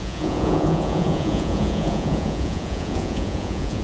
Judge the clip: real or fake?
fake